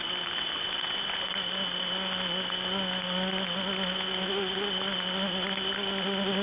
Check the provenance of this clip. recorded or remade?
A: recorded